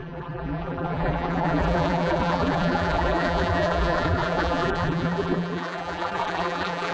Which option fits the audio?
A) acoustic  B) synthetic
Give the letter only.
B